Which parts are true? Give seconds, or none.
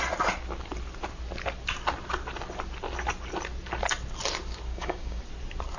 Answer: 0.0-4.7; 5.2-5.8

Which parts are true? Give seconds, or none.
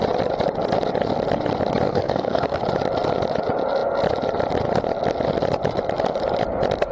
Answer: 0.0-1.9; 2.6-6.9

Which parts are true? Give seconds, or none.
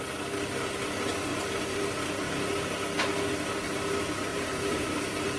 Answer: 0.0-1.3; 2.5-4.3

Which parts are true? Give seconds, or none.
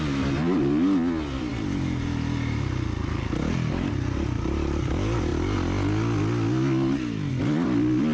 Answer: 0.0-8.1